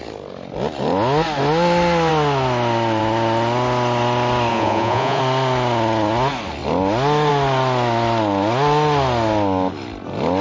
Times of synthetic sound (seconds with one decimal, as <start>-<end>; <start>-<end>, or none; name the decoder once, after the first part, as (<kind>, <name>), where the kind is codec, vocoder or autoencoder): 4.5-5.2 (vocoder, Vocos)